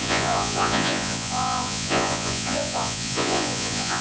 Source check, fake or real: fake